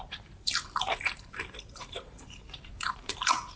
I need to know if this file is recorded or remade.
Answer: remade